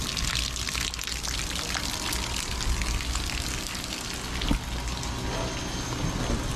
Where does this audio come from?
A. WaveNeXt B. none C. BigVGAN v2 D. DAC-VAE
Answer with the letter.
B